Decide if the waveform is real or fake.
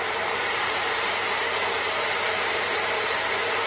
fake